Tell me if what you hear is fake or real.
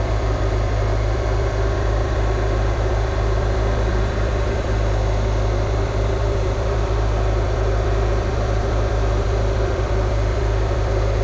fake